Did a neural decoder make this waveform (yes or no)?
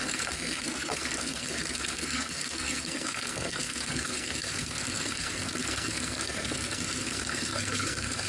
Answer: yes